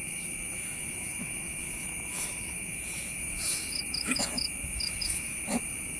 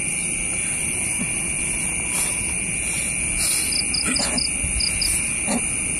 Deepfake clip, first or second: first